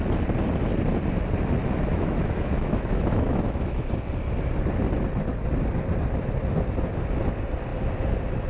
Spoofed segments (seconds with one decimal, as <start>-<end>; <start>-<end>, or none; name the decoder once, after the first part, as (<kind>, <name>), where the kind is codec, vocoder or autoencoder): 1.9-3.8 (autoencoder, DAC-VAE)